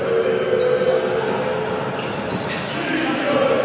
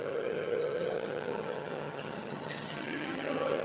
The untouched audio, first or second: first